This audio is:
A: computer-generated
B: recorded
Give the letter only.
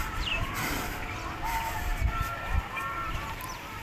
A